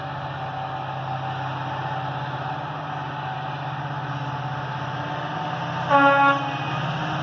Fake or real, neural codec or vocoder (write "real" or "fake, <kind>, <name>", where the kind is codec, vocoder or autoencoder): real